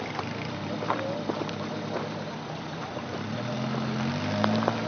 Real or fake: real